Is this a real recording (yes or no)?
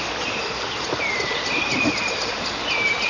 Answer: yes